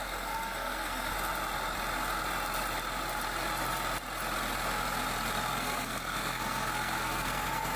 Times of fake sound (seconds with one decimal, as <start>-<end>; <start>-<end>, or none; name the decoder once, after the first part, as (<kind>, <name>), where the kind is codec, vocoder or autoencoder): 0.0-1.1 (codec, SNAC); 5.4-7.8